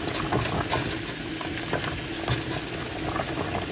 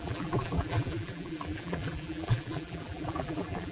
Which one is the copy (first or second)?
second